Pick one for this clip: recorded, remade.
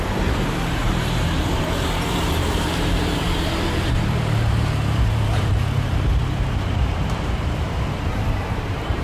remade